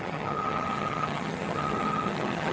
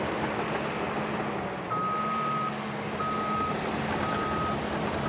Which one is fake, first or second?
first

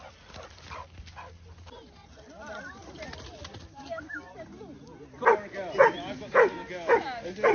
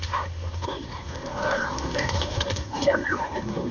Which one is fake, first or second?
second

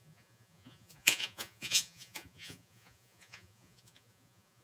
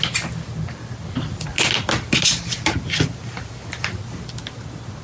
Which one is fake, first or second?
first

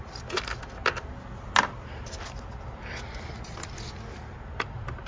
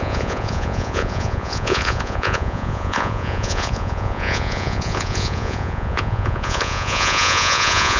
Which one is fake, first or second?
second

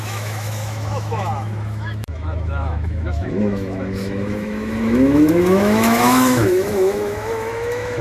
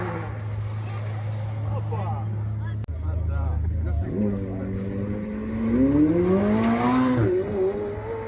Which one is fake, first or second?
first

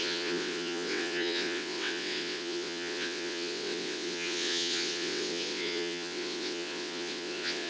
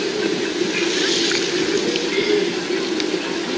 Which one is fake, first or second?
first